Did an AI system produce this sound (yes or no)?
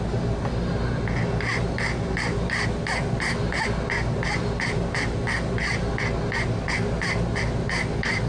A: no